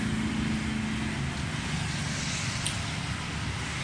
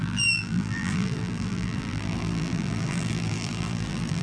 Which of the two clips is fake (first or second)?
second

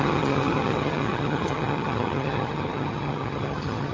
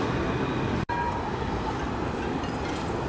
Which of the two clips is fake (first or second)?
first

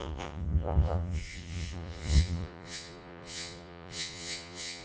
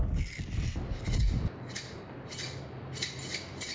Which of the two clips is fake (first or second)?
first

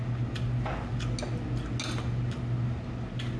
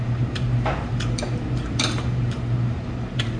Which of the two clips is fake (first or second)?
second